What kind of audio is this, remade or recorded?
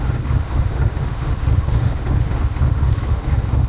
remade